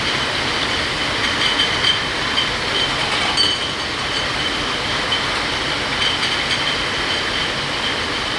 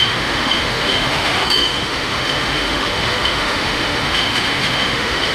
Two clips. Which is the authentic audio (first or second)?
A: first